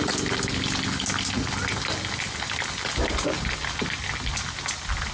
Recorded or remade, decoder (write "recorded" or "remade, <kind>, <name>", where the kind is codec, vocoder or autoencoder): recorded